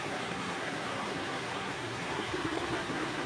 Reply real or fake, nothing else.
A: fake